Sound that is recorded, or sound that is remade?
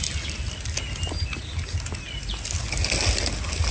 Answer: recorded